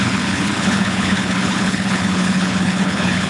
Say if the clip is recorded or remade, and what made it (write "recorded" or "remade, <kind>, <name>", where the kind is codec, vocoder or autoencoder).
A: remade, codec, HILCodec